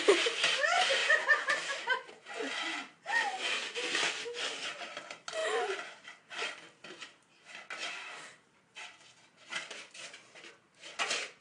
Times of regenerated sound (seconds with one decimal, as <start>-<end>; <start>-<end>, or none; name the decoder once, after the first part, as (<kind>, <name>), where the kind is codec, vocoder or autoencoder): 1.0-2.1 (vocoder, BigVGAN v2)